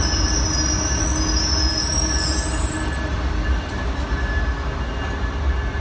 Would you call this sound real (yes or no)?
yes